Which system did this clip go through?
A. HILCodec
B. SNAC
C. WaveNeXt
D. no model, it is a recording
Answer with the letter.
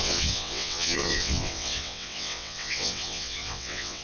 C